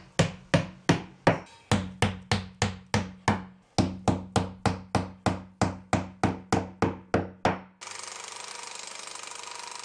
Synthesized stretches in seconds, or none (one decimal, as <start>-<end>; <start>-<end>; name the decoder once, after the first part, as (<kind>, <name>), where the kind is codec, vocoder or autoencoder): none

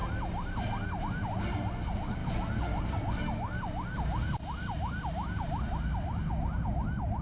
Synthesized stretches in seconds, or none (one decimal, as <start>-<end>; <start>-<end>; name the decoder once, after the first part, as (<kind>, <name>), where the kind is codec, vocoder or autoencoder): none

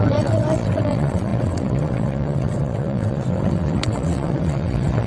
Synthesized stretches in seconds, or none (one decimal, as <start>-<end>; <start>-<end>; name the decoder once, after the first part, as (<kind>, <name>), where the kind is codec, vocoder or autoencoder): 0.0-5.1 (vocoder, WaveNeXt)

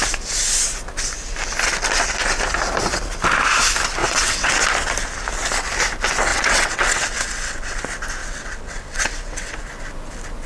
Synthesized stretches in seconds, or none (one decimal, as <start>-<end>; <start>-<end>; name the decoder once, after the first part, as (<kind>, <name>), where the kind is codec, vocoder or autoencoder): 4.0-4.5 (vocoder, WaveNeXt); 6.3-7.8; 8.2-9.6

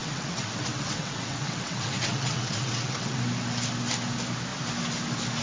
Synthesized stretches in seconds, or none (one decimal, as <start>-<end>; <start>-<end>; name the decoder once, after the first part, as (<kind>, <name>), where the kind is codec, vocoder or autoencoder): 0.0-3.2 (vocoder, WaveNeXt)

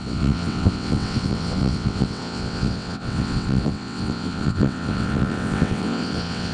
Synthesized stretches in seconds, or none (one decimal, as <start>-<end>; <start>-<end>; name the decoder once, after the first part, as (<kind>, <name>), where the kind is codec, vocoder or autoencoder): 0.0-6.5 (vocoder, WaveNeXt)